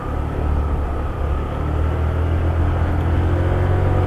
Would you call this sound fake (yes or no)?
no